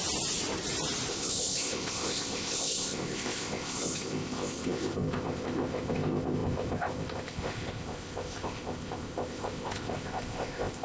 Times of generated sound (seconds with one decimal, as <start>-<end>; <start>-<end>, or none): 1.1-10.8